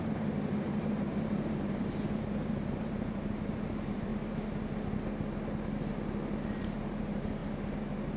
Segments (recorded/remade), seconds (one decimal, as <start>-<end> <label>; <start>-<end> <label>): 0.0-4.1 remade; 4.1-6.6 recorded; 6.6-7.4 remade; 7.4-8.2 recorded